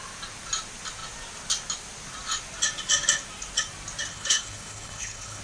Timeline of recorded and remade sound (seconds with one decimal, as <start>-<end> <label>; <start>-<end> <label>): 0.0-4.1 recorded; 4.1-5.4 remade